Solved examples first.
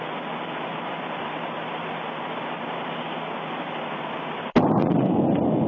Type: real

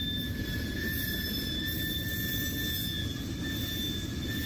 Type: real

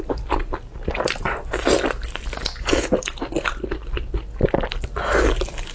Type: real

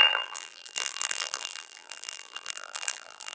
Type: fake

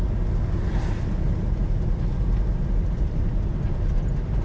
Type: real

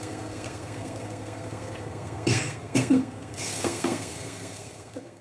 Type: fake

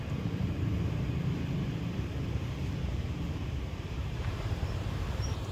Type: fake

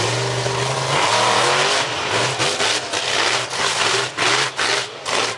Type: real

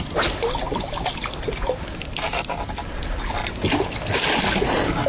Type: real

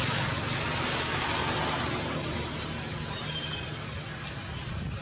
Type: real